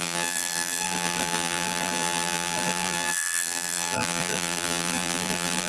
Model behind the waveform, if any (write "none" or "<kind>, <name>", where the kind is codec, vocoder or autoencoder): vocoder, BigVGAN v2